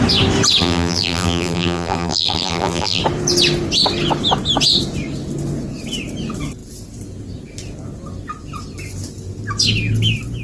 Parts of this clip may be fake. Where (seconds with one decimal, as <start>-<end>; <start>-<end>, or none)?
0.6-3.0

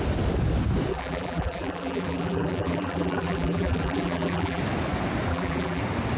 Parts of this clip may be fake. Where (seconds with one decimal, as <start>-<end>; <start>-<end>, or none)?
0.9-4.6; 5.3-5.8

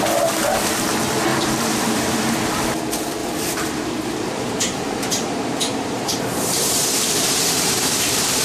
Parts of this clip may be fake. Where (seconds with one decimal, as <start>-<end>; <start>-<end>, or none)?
1.3-2.3; 3.2-8.4

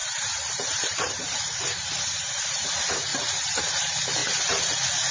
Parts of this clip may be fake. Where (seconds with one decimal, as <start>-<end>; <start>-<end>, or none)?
0.0-4.2

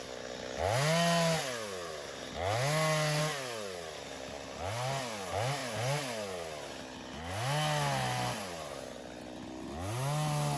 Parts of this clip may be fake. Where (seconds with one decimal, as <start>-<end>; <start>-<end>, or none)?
8.4-9.0